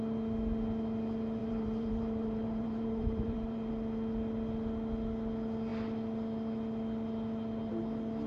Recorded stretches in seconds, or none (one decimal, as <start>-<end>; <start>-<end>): 0.0-1.4; 3.7-8.3